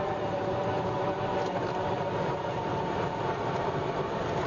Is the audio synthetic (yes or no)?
no